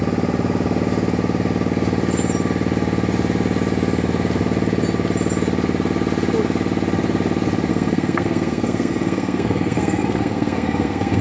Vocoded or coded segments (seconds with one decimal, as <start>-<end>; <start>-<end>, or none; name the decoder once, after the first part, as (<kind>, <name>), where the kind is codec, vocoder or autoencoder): 7.7-11.2 (codec, SNAC)